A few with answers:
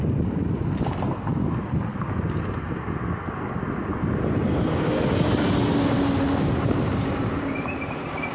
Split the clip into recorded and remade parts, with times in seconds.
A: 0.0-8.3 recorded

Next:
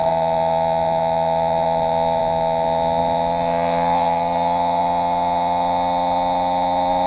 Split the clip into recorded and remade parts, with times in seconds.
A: 0.0-7.1 recorded